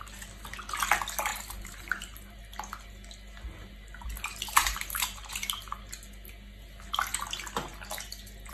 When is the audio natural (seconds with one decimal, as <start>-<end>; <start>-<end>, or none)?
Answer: 0.0-1.3; 2.4-4.3; 5.8-8.5